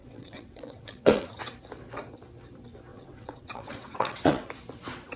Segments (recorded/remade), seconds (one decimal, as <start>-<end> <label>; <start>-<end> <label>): 0.0-1.4 remade; 1.4-2.9 recorded; 2.9-4.5 remade; 4.5-5.2 recorded